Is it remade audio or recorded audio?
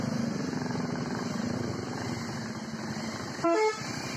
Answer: recorded